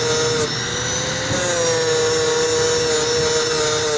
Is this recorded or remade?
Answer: recorded